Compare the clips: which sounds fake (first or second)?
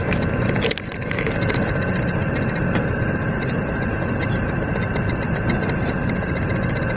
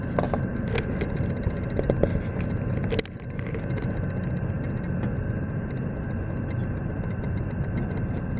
first